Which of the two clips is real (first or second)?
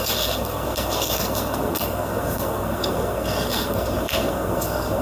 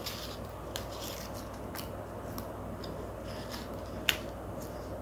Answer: second